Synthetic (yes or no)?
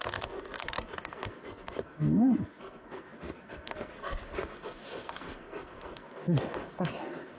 yes